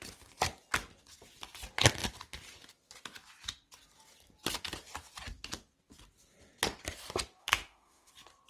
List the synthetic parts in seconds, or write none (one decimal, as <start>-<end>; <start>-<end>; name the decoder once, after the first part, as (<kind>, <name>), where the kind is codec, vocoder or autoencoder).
7.4-8.1 (autoencoder, DAC-VAE)